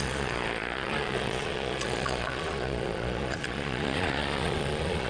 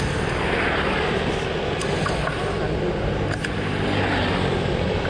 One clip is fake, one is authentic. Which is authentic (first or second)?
second